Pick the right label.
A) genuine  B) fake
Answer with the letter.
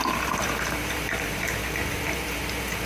B